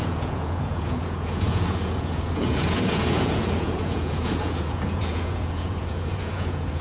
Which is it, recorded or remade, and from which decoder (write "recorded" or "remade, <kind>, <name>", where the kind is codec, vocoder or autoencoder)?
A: remade, vocoder, Vocos